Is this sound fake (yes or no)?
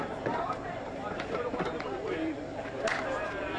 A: yes